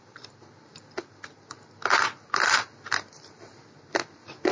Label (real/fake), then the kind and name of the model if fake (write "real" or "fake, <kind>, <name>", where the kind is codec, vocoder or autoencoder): real